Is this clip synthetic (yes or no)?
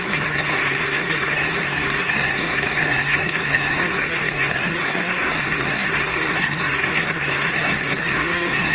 yes